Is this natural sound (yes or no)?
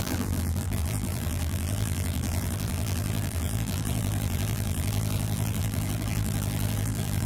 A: no